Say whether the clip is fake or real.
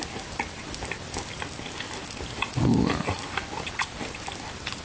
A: real